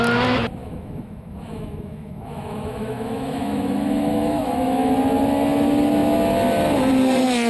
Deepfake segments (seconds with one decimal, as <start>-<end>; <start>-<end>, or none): 0.6-4.9